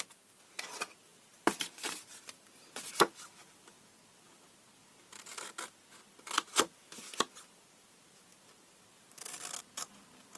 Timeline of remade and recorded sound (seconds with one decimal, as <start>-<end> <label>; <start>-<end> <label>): 0.0-10.4 recorded